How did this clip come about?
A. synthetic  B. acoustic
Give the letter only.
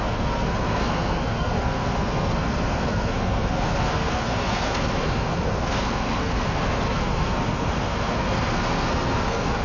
A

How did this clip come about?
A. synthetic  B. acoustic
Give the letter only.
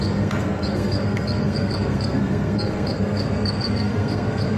A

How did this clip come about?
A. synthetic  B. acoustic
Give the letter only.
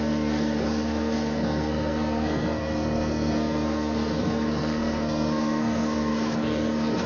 A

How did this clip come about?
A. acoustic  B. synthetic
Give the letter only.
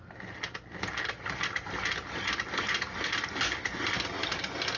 A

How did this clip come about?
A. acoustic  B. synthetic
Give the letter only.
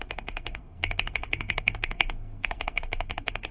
B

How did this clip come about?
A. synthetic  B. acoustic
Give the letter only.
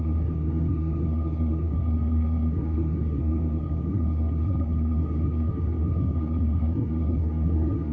A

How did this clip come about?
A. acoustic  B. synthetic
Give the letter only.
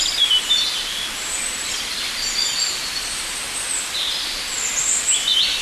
A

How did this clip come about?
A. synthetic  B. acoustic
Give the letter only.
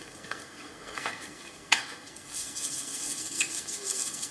A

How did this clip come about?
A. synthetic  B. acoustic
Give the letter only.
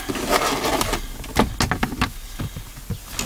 B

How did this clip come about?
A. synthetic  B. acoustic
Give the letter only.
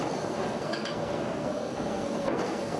A